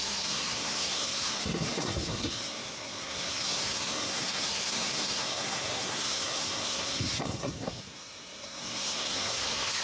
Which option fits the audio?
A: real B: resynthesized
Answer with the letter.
B